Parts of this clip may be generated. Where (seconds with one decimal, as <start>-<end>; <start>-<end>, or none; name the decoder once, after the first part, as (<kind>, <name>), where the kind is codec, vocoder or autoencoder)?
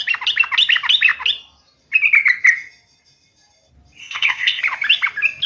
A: 4.0-4.6 (codec, ZipCodec)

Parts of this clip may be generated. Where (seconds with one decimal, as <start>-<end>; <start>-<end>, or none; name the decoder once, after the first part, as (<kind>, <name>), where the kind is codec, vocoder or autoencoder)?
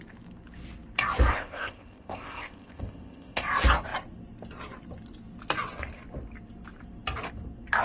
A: 1.3-3.4 (codec, ZipCodec)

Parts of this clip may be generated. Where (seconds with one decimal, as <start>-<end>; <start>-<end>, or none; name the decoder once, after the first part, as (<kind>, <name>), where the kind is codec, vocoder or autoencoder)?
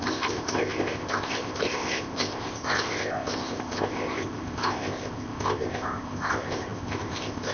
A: 0.0-7.5 (codec, ZipCodec)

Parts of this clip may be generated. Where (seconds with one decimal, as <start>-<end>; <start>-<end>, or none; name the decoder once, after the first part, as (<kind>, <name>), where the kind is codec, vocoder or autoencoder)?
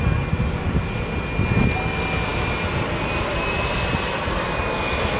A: none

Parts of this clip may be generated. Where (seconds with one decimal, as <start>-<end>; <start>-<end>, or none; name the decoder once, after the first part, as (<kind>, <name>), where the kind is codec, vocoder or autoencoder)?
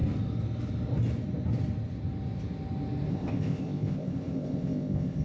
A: 3.1-5.2 (codec, ZipCodec)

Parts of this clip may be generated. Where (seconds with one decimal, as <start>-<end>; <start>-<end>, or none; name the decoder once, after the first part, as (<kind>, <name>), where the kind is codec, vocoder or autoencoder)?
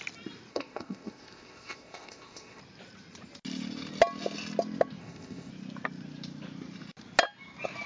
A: 0.5-2.6 (codec, ZipCodec); 5.0-5.5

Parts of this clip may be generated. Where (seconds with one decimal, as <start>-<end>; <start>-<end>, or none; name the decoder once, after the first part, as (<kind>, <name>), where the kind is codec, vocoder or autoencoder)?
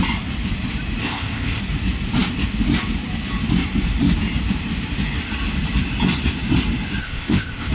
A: 1.0-1.6 (codec, ZipCodec); 7.0-7.7